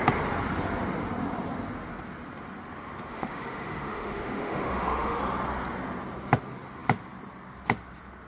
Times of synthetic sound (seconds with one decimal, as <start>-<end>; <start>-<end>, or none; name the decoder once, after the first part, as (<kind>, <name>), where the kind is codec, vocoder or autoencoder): 3.1-5.2 (autoencoder, DAC-VAE)